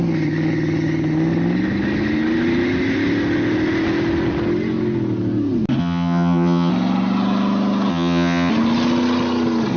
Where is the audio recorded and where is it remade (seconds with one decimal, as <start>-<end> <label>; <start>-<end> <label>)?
0.0-5.8 recorded; 5.8-6.7 remade; 6.7-7.9 recorded; 7.9-8.5 remade; 8.5-9.8 recorded